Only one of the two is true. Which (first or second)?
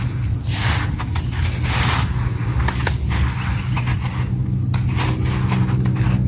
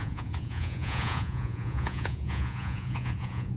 first